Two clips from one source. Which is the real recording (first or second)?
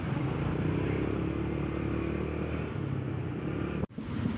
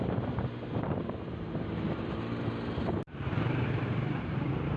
first